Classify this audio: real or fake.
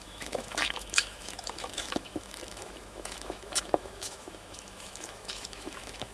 fake